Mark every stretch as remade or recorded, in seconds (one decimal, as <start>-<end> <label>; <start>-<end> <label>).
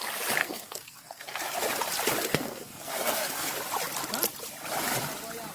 0.0-0.4 recorded; 0.4-1.4 remade; 1.4-2.3 recorded; 2.3-3.5 remade; 3.5-5.5 recorded